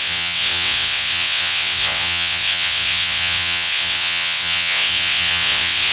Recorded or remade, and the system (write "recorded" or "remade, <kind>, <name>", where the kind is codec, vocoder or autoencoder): remade, vocoder, WaveNeXt